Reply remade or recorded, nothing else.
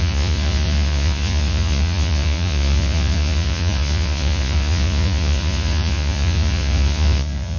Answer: remade